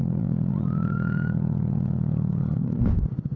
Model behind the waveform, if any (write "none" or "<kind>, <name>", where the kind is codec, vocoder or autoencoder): vocoder, Vocos